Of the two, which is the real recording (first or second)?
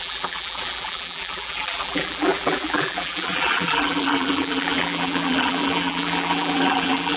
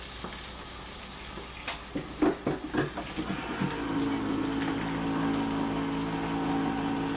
second